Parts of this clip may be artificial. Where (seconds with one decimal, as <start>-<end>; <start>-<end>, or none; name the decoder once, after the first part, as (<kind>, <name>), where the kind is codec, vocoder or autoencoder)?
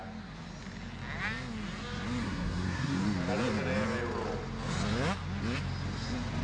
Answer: 2.2-3.0 (codec, SNAC)